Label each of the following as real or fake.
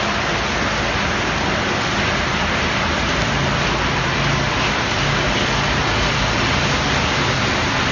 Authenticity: real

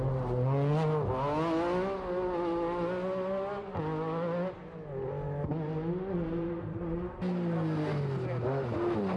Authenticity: real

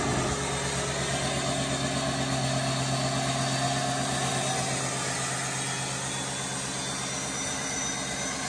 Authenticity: real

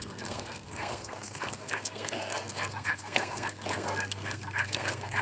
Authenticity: fake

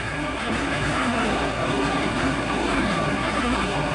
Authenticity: fake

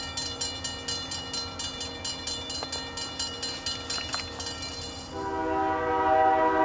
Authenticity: real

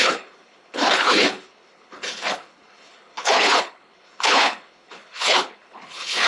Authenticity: fake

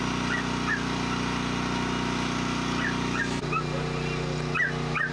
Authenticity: real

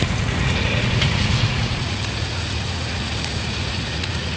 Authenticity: fake